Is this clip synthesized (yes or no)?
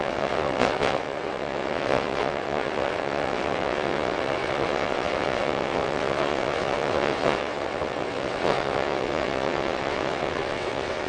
yes